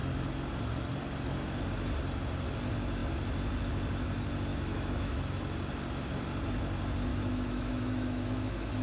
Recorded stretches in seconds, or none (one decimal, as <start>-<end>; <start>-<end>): 0.0-4.5; 5.2-7.1